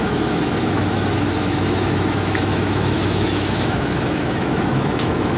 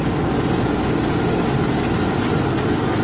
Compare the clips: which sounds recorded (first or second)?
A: second